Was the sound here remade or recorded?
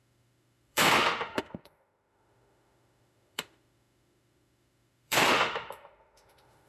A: remade